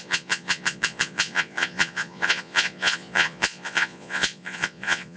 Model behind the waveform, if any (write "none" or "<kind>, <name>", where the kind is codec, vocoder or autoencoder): vocoder, Vocos